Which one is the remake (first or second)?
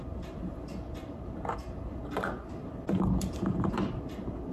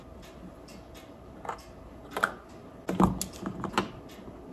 first